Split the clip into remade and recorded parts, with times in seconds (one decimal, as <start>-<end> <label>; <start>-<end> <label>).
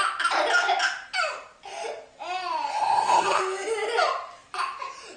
0.0-2.7 recorded; 2.7-3.4 remade; 3.4-5.2 recorded